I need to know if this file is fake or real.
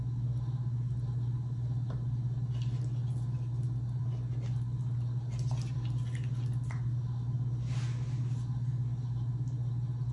real